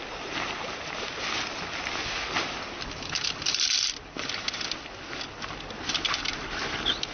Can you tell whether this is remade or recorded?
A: recorded